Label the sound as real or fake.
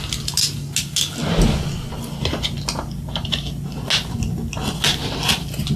real